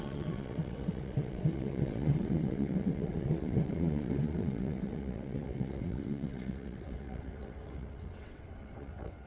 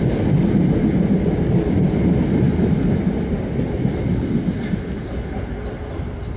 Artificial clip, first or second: first